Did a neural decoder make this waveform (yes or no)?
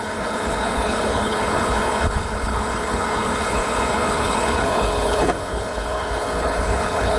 yes